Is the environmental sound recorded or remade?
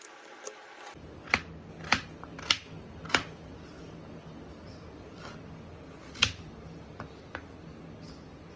recorded